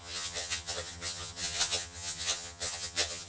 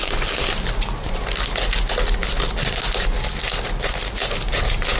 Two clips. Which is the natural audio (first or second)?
second